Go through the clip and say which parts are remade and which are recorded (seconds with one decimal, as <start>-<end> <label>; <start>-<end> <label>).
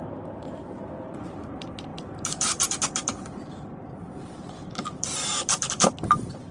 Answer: 0.0-6.5 remade